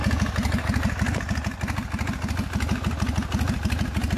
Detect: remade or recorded recorded